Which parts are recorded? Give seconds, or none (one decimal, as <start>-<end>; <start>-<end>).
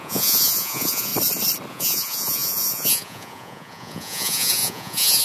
1.1-1.7